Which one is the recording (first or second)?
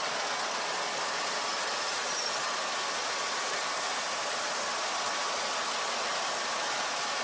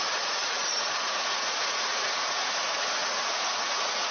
first